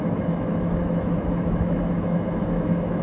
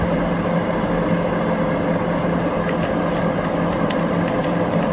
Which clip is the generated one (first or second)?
first